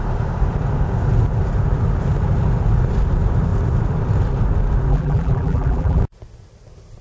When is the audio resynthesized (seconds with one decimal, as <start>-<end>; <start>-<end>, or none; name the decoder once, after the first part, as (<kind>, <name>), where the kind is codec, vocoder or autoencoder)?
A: 4.9-6.0 (vocoder, BigVGAN v2)